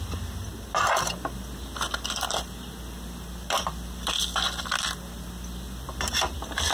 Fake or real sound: fake